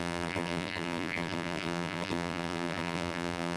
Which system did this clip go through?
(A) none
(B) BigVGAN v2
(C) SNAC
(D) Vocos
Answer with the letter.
B